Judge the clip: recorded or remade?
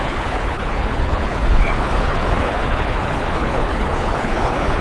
remade